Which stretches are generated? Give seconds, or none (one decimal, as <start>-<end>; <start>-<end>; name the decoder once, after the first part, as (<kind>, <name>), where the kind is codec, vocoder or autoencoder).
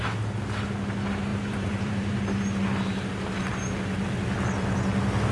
1.3-2.1 (vocoder, BigVGAN v2)